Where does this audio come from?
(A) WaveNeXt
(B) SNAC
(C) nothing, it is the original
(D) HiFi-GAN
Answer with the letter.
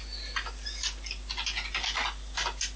C